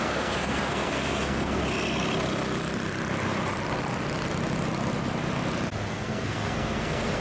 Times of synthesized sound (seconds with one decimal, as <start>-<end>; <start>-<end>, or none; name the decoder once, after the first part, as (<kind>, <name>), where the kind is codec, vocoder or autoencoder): 0.0-1.6 (codec, SNAC); 5.9-7.2